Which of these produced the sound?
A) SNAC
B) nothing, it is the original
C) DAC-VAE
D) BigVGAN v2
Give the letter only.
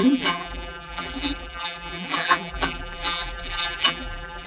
D